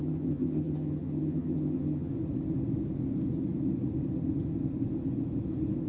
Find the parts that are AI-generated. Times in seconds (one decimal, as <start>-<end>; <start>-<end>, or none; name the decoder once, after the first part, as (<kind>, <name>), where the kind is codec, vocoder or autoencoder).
0.0-2.1 (vocoder, HiFi-GAN)